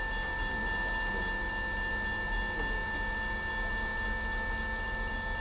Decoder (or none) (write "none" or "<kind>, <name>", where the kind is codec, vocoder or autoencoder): none